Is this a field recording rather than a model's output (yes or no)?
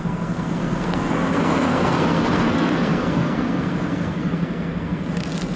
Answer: no